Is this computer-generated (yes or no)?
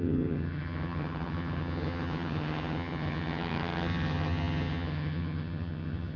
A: yes